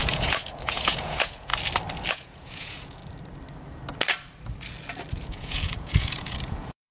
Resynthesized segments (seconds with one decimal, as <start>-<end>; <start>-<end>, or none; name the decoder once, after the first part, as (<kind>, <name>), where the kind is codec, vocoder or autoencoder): 0.0-1.5 (vocoder, Vocos); 2.1-3.0; 5.1-6.9